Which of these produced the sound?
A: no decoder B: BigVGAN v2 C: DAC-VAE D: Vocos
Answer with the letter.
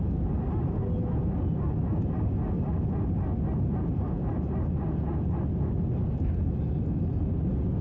A